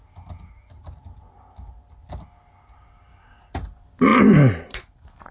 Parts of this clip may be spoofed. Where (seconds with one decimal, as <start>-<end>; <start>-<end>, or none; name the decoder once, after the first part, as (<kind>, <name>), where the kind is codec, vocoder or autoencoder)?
none